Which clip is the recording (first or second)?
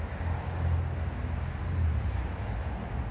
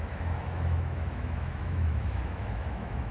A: first